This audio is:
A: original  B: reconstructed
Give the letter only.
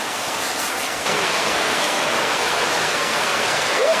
B